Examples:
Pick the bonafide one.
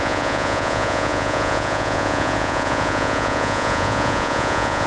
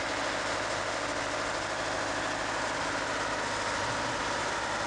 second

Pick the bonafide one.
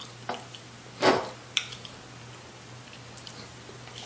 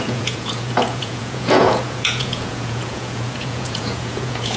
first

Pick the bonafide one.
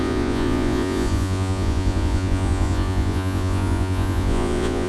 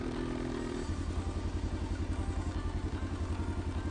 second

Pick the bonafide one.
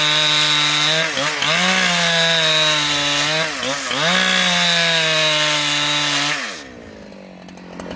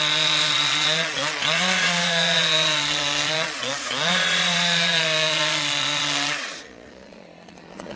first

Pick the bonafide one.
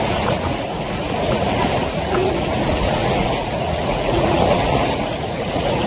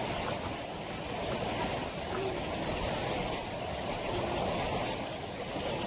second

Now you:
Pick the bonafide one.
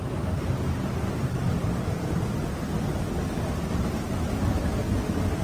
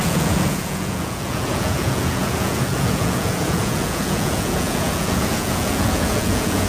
first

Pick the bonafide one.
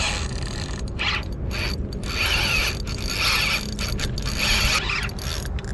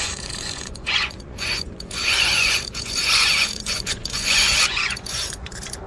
first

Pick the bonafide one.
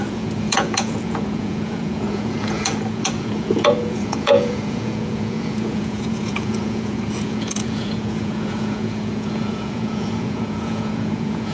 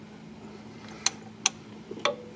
second